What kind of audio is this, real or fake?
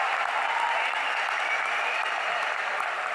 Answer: real